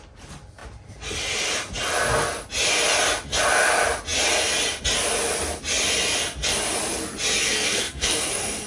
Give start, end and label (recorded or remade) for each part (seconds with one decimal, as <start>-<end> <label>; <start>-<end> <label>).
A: 0.0-7.4 recorded; 7.4-8.7 remade

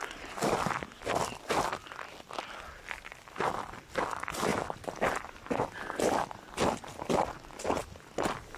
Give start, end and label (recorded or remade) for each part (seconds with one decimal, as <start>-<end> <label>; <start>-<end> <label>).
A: 0.0-8.6 recorded